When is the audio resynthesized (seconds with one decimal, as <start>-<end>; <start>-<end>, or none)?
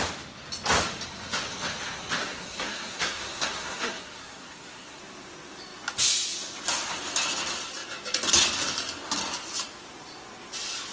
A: 2.2-5.0